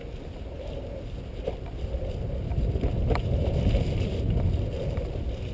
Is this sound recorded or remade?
recorded